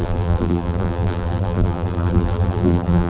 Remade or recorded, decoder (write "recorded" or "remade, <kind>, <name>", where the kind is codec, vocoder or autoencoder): remade, vocoder, BigVGAN v2